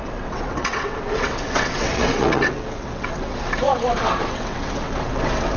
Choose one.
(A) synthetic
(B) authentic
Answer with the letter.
A